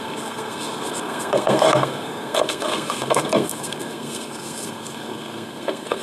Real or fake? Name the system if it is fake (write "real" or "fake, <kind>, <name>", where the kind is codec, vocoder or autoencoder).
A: fake, codec, SNAC